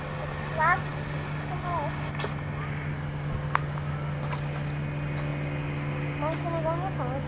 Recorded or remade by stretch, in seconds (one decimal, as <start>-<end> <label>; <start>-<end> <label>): 0.0-7.3 recorded